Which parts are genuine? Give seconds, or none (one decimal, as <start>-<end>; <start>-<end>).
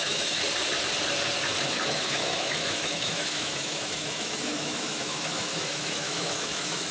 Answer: 0.4-1.6